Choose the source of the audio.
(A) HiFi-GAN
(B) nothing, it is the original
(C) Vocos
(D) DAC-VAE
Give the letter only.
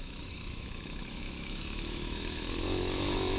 D